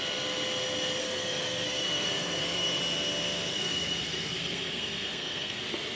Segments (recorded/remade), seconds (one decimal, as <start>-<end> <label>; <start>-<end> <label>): 0.0-1.0 recorded; 1.0-2.8 remade; 2.8-3.5 recorded; 3.5-5.6 remade; 5.6-6.0 recorded